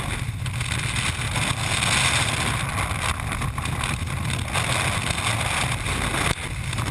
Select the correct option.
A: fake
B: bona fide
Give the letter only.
B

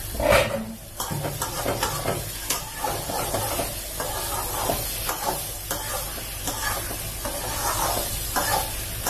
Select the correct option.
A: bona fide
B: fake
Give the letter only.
A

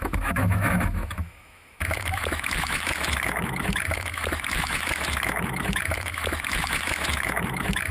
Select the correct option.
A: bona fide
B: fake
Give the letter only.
B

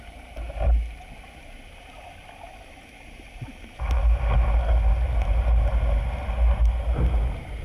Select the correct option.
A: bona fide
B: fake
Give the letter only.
A